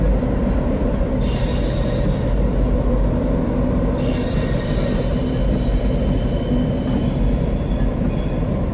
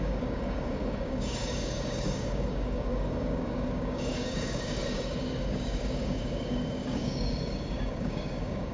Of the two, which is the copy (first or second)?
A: second